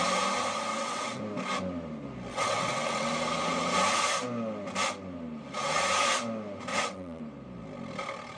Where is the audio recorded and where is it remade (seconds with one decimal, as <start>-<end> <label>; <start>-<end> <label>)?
0.0-0.7 recorded; 0.7-1.2 remade; 1.2-2.3 recorded; 2.3-3.1 remade; 3.1-6.7 recorded; 6.7-7.2 remade; 7.2-8.4 recorded